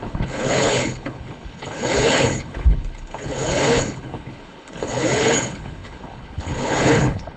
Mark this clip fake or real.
fake